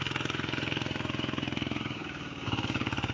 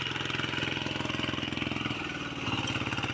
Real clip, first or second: second